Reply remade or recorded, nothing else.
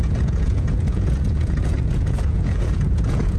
remade